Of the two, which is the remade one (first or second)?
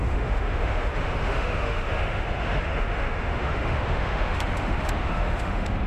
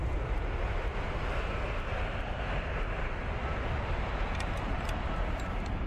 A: first